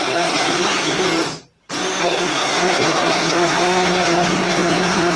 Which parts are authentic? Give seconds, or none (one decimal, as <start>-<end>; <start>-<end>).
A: 1.0-2.0